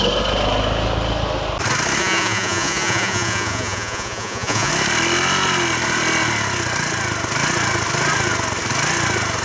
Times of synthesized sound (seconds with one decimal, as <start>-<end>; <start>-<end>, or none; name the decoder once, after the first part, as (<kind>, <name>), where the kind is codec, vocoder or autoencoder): 2.0-4.7 (vocoder, Vocos)